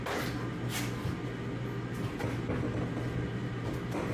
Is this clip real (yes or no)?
yes